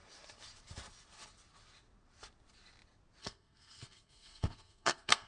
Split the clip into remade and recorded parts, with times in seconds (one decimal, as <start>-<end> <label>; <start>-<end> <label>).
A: 0.0-3.2 recorded; 3.2-5.3 remade